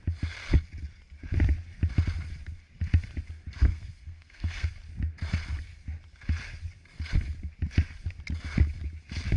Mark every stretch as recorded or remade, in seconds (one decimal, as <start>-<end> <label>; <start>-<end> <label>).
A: 0.0-3.6 recorded; 3.6-4.7 remade; 4.7-9.4 recorded